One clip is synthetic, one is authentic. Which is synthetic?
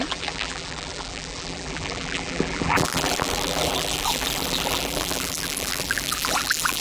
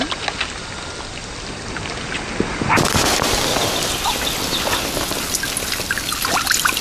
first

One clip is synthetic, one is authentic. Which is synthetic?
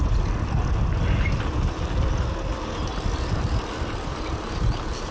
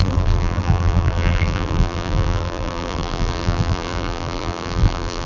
second